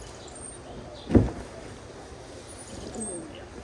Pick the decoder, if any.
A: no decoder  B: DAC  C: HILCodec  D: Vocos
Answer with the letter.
A